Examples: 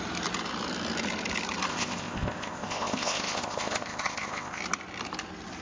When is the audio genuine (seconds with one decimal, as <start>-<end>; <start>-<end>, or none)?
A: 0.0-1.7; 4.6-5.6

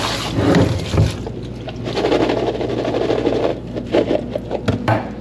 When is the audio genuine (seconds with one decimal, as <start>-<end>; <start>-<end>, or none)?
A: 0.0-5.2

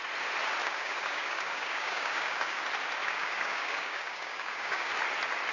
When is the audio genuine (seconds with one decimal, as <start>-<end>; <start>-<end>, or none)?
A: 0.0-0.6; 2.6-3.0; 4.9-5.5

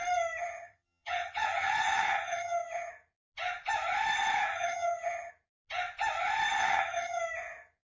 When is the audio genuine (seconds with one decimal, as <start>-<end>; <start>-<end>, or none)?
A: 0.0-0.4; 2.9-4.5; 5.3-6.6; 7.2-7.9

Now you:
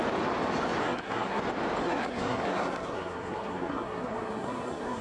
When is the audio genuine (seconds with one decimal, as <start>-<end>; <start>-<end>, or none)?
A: 0.0-0.8; 1.4-1.8